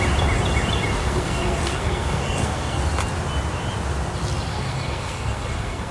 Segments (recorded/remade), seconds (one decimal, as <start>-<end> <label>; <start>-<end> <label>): 0.0-1.0 recorded; 1.0-2.8 remade; 2.8-4.5 recorded; 4.5-5.9 remade